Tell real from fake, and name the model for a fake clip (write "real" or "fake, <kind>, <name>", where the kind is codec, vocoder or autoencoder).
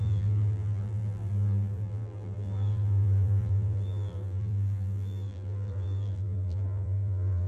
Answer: fake, vocoder, BigVGAN v2